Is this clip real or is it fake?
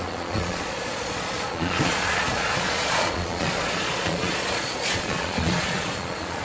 fake